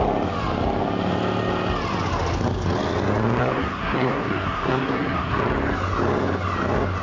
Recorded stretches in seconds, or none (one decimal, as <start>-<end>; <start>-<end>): 0.0-3.4; 5.4-7.0